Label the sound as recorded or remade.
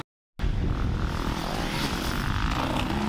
recorded